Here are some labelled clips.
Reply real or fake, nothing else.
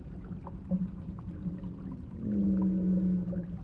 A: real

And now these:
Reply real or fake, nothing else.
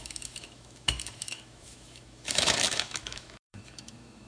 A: fake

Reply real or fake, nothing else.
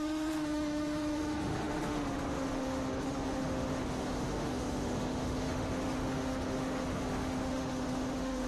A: fake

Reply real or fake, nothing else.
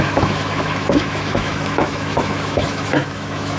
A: fake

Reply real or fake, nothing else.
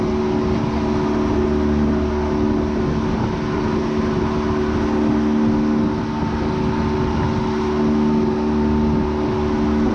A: real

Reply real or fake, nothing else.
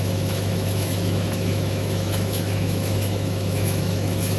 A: fake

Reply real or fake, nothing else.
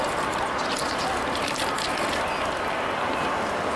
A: real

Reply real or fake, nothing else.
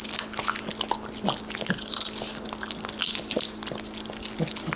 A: real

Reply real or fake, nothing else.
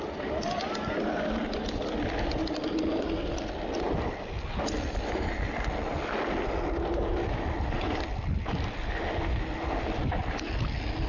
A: real